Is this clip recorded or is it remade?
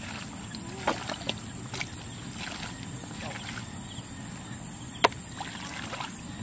recorded